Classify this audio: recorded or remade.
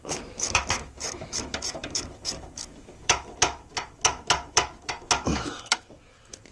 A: remade